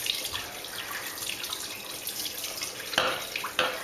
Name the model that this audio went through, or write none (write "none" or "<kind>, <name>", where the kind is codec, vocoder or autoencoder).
none